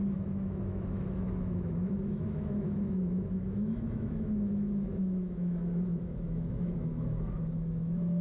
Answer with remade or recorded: remade